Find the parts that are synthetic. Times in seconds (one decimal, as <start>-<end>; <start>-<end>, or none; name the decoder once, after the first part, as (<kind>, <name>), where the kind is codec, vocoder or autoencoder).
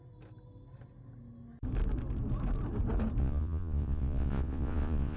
3.2-5.2 (vocoder, Vocos)